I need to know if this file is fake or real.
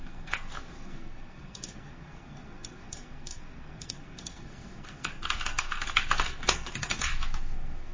fake